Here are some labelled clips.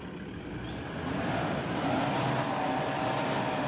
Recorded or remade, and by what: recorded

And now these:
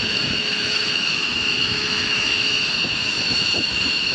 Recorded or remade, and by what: remade, autoencoder, DAC-VAE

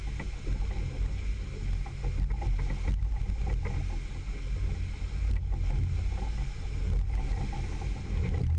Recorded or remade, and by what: recorded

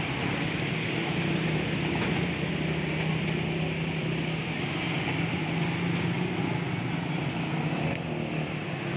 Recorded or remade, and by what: recorded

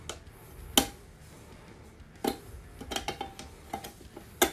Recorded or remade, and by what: recorded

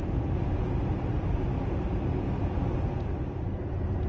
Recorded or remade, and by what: recorded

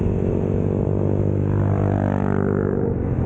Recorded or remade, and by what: recorded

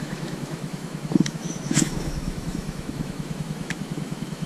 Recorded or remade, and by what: remade, autoencoder, DAC-VAE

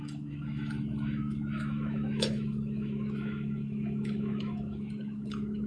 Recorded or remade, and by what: remade, autoencoder, DAC-VAE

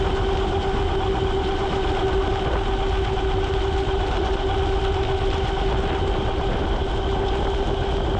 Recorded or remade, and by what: recorded